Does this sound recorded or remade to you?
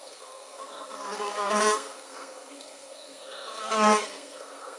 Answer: remade